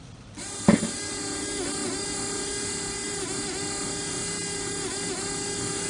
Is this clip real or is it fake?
real